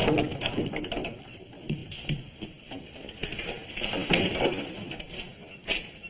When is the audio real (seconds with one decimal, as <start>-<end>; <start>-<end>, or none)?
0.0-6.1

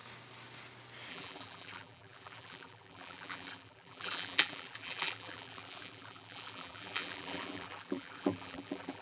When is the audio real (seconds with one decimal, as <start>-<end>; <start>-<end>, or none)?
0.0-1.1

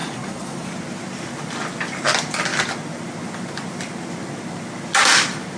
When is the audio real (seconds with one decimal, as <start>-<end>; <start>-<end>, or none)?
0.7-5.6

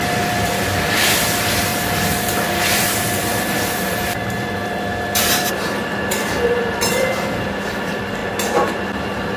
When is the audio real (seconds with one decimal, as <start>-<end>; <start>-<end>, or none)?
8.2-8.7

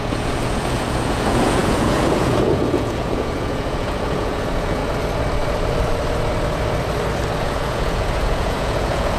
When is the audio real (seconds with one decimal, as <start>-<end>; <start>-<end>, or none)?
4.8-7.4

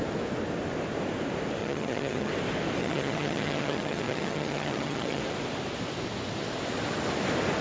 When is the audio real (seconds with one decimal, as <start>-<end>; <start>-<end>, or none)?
0.0-1.6; 2.3-2.8; 5.2-7.6

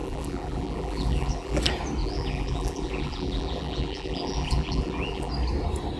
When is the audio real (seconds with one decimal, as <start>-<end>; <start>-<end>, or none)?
1.6-2.0; 5.3-6.0

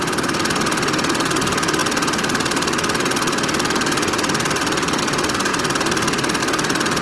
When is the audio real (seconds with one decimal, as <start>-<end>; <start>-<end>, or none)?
0.0-7.0